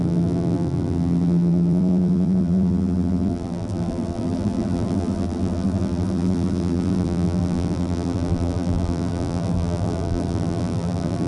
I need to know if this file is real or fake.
fake